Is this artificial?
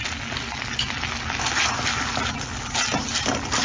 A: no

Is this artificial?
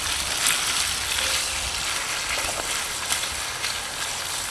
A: no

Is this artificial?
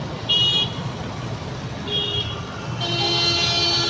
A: no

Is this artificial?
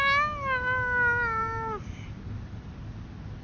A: no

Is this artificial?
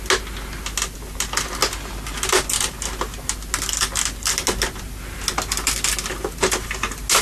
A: no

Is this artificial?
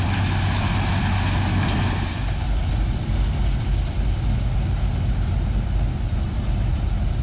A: no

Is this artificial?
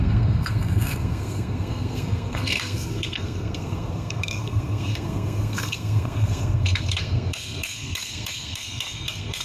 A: yes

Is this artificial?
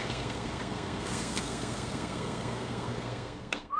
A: yes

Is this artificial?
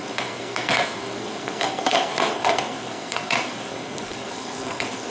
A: yes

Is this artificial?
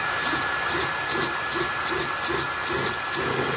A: no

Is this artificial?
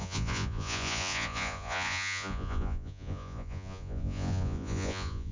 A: yes